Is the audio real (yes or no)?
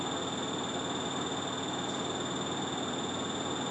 yes